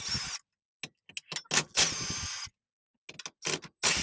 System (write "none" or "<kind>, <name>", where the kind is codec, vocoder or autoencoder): none